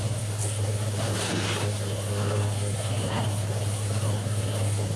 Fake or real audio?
fake